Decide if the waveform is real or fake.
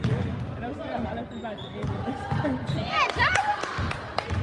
real